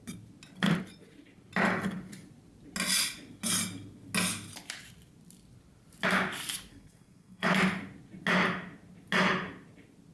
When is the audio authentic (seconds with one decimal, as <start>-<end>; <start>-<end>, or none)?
0.0-6.7; 7.5-10.1